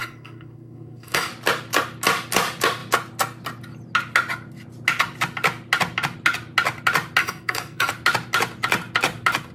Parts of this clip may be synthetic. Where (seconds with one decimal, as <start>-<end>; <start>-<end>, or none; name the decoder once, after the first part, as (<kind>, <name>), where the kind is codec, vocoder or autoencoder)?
0.0-1.3 (codec, SNAC); 7.2-7.9

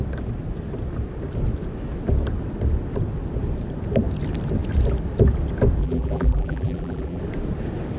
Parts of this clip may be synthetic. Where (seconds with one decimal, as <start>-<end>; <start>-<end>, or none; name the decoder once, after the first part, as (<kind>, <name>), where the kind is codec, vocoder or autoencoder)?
5.8-7.2 (vocoder, BigVGAN v2)